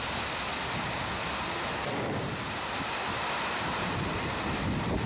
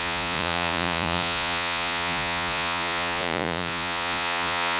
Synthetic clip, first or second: second